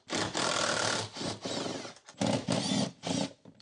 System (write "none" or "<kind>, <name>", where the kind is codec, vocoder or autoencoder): none